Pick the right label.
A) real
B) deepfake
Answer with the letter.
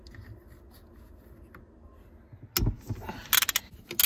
A